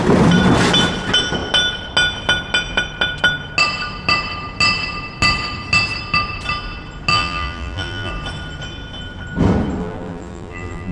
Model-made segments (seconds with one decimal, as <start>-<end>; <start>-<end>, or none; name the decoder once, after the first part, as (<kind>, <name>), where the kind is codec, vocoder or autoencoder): 7.1-8.1 (vocoder, BigVGAN v2); 9.8-10.9